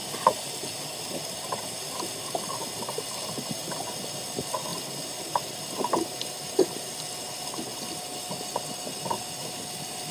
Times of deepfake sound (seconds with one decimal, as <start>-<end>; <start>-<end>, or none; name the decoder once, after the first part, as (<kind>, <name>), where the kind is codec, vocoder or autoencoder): none